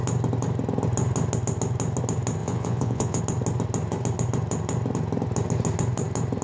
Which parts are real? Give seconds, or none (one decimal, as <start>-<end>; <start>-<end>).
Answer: 0.0-2.4; 3.2-6.4